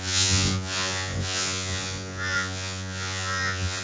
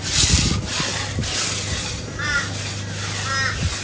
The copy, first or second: first